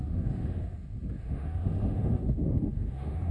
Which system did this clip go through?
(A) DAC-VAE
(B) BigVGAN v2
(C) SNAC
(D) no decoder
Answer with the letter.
A